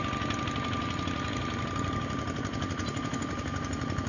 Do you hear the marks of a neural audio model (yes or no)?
no